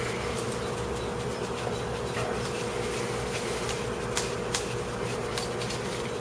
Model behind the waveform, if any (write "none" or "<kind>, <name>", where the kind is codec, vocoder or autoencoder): none